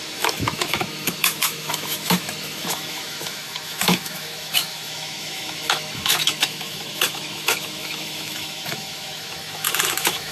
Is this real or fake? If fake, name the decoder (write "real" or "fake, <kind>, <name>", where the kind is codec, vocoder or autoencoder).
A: fake, autoencoder, DAC-VAE